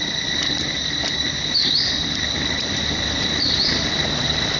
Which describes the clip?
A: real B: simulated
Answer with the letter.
B